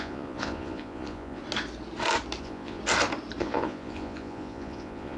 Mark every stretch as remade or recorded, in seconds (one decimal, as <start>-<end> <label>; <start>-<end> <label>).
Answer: 0.0-1.4 remade; 1.4-2.4 recorded; 2.4-2.8 remade; 2.8-3.4 recorded; 3.4-5.2 remade